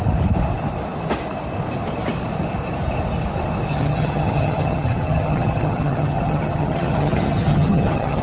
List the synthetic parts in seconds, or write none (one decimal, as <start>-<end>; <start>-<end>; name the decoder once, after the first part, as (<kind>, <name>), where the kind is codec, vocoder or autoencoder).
3.7-8.2 (vocoder, HiFi-GAN)